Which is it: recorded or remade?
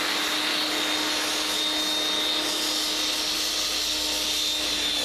recorded